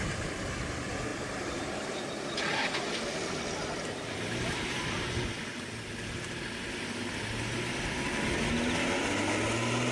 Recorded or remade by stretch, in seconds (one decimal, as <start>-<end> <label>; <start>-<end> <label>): 0.0-1.1 recorded; 1.1-1.9 remade; 1.9-9.9 recorded